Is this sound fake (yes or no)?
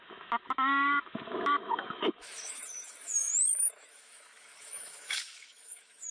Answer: yes